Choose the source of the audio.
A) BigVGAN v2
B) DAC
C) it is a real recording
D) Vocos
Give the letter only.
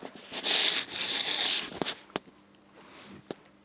C